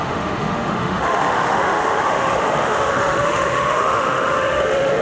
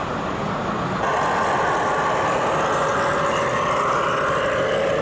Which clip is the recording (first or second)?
second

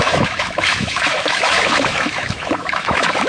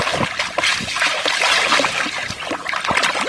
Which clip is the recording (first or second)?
second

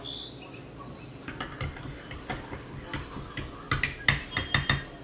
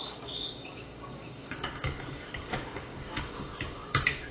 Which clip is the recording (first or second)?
first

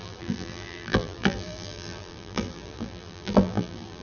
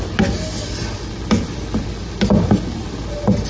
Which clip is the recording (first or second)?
second